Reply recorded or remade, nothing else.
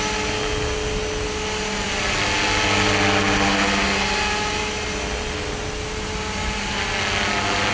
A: recorded